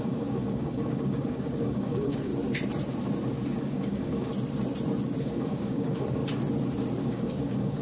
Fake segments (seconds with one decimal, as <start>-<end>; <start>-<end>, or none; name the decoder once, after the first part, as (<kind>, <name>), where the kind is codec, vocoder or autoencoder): 0.0-2.3 (codec, DAC); 3.6-4.3; 5.2-6.2; 7.0-7.8